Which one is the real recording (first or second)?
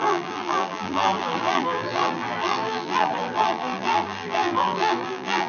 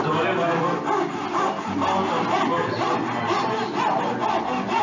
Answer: second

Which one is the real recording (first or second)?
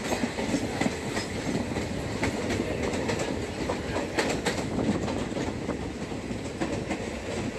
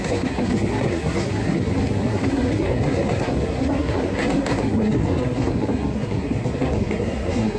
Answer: first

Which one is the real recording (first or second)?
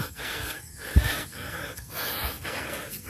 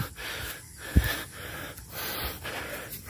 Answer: second